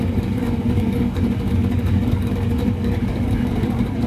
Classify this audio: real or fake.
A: fake